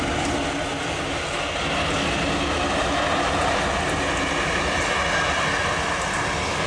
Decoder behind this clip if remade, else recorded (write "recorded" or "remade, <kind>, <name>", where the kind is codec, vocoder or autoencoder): recorded